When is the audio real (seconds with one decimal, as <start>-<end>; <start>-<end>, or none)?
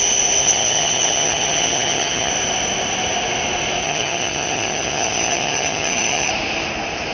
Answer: 0.0-0.4; 2.3-3.8; 6.3-7.1